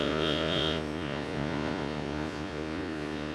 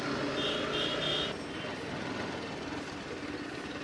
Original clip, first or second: second